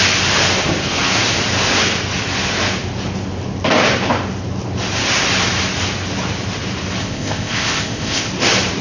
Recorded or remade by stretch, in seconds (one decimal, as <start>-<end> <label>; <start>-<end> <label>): 0.0-7.0 recorded; 7.0-8.3 remade; 8.3-8.8 recorded